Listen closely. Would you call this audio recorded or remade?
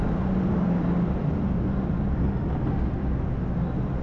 recorded